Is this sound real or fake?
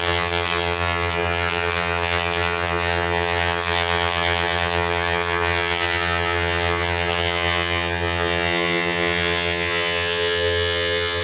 fake